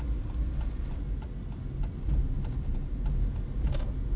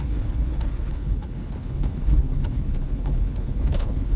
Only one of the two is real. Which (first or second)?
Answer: first